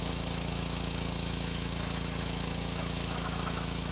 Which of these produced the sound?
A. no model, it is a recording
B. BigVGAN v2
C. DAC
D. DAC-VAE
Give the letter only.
D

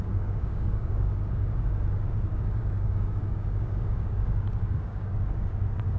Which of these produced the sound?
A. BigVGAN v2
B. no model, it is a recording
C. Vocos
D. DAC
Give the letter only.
D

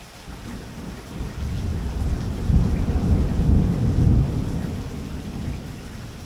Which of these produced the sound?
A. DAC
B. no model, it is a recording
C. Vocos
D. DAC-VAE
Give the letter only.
B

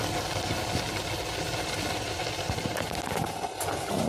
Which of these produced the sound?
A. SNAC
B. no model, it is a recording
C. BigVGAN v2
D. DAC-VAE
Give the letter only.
B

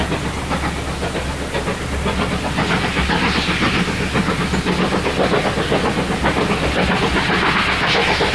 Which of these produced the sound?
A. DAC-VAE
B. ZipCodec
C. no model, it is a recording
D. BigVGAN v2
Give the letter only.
C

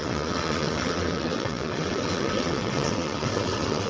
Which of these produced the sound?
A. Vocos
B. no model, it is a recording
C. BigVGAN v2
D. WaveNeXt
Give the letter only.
D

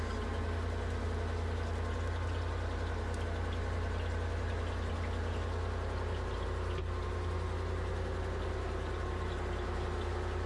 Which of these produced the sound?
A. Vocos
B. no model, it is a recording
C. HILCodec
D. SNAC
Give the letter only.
B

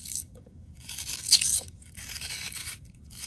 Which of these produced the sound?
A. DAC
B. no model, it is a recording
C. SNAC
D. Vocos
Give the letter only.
A